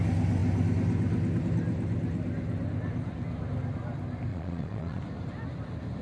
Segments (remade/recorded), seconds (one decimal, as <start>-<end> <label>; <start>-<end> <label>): 0.0-4.3 recorded; 4.3-5.0 remade; 5.0-6.0 recorded